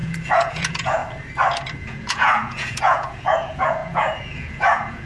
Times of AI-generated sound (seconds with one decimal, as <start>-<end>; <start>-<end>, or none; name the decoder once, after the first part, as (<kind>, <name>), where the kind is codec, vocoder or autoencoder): 0.0-1.0 (vocoder, Vocos); 1.8-5.1